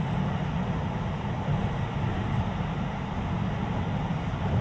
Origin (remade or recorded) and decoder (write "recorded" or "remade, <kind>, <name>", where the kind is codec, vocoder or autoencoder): recorded